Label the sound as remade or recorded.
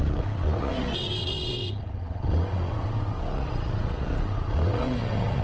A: remade